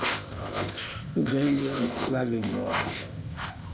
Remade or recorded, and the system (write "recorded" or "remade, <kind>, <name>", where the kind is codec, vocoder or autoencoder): remade, codec, ZipCodec